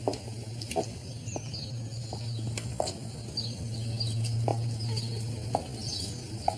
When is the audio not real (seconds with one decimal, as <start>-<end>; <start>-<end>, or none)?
none